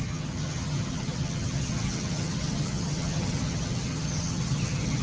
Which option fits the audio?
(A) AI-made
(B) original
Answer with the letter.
A